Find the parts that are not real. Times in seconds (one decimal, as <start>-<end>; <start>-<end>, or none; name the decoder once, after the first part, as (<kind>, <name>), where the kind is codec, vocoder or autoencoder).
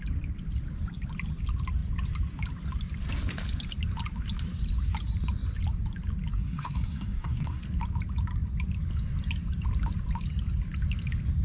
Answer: 6.3-7.6 (codec, SNAC)